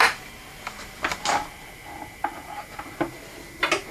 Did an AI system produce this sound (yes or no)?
no